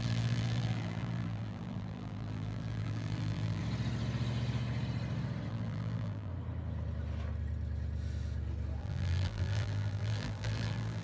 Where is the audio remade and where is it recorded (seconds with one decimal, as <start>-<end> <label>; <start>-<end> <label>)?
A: 0.0-3.6 remade; 3.6-5.5 recorded; 5.5-6.3 remade; 6.3-8.8 recorded; 8.8-11.0 remade